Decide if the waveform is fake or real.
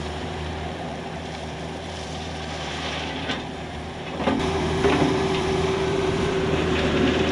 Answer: fake